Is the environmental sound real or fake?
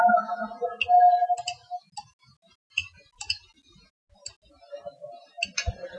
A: real